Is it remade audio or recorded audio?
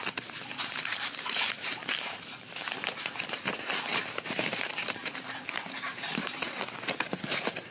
remade